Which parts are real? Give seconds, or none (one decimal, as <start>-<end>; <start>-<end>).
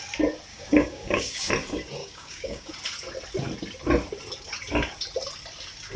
0.0-0.5; 1.5-2.0; 2.7-6.0